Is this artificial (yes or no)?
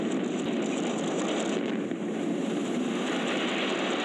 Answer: no